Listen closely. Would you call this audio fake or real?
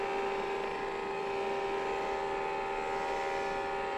real